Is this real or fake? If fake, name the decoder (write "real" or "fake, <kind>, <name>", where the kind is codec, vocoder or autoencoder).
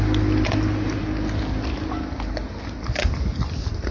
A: real